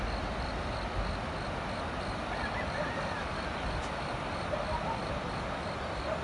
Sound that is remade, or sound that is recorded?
remade